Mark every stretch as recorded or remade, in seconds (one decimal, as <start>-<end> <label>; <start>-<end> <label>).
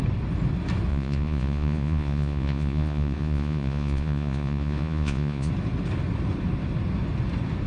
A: 0.0-0.9 recorded; 0.9-5.5 remade; 5.5-7.7 recorded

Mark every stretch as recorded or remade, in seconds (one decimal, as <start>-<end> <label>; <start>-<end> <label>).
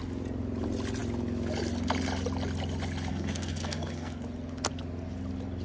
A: 0.0-3.1 recorded; 3.1-4.2 remade; 4.2-5.6 recorded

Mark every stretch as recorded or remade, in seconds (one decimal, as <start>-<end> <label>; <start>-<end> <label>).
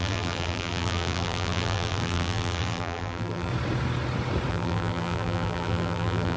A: 0.0-3.5 remade; 3.5-4.5 recorded; 4.5-6.4 remade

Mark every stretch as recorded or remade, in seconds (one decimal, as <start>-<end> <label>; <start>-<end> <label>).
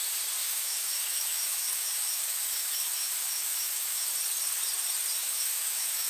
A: 0.0-0.4 recorded; 0.4-4.1 remade; 4.1-5.2 recorded; 5.2-6.1 remade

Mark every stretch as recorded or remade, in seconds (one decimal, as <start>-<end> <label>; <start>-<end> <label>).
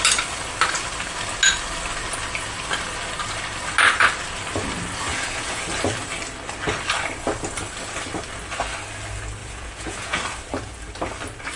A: 0.0-5.1 recorded; 5.1-5.6 remade; 5.6-9.4 recorded; 9.4-10.2 remade; 10.2-11.6 recorded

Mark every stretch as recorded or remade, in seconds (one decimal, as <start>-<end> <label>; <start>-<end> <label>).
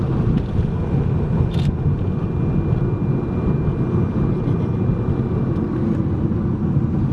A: 0.0-7.1 recorded